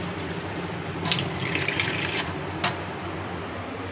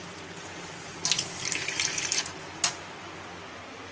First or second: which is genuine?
second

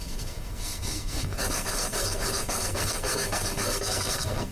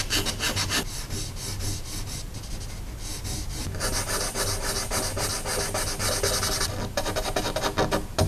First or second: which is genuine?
second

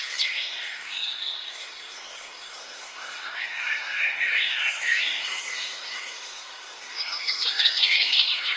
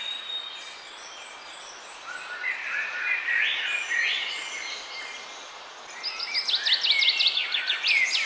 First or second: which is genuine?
second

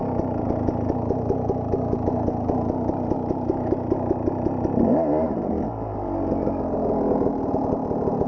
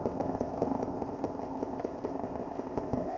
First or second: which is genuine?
first